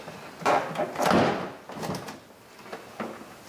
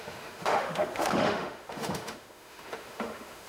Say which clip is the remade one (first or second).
second